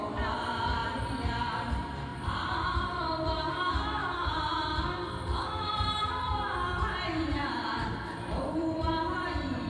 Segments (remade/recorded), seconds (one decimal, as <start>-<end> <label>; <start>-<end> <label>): 0.0-9.7 remade